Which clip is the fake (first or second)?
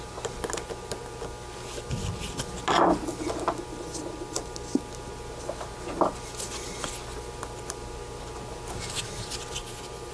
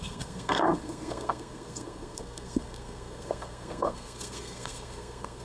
second